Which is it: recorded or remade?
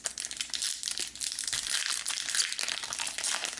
recorded